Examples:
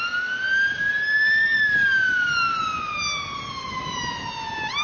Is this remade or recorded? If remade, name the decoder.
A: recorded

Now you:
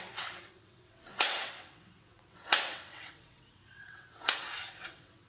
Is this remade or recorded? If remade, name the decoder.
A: remade, vocoder, WaveNeXt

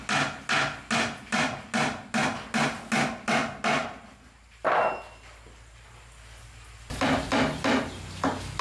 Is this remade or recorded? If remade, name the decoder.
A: recorded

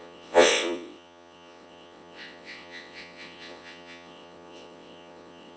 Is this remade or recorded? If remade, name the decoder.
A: remade, vocoder, WaveNeXt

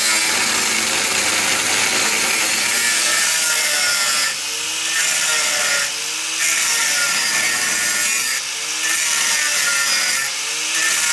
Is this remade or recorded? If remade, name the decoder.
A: recorded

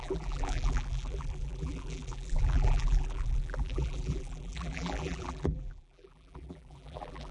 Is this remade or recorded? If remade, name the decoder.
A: remade, vocoder, BigVGAN v2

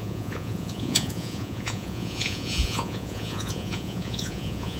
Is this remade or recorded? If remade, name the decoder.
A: remade, vocoder, Vocos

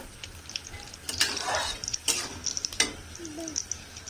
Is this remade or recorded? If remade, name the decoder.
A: recorded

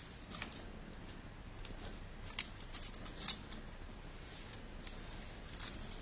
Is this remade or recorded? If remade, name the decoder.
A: recorded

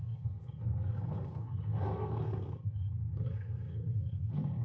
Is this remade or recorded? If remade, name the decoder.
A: remade, codec, SNAC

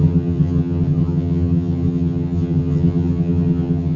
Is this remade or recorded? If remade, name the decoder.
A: remade, vocoder, HiFi-GAN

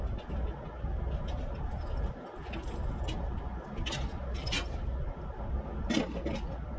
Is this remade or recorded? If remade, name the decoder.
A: recorded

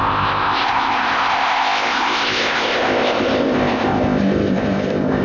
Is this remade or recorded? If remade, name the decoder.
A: remade, codec, ZipCodec